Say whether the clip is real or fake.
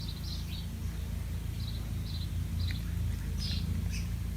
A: real